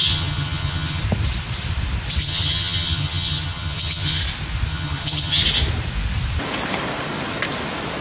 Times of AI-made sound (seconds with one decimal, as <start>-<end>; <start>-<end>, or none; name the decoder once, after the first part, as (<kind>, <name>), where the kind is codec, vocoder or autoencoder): 0.0-1.0 (vocoder, HiFi-GAN); 2.2-4.2; 4.7-5.4